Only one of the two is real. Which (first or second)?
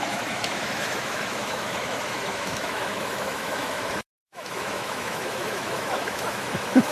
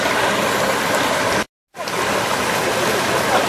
second